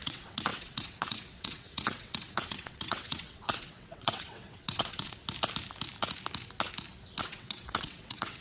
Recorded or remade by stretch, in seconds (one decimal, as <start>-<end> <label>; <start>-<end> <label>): 0.0-5.2 remade; 5.2-7.2 recorded; 7.2-8.4 remade